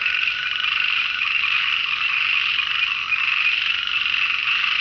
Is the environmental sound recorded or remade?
recorded